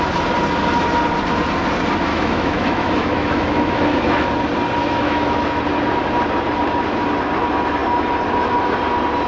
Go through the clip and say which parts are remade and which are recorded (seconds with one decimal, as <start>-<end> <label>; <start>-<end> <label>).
0.0-2.1 recorded; 2.1-4.3 remade; 4.3-4.8 recorded; 4.8-5.6 remade; 5.6-9.3 recorded